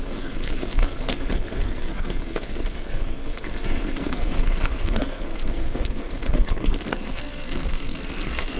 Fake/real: fake